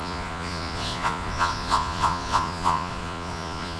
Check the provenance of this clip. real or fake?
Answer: fake